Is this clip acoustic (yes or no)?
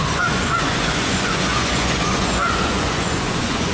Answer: no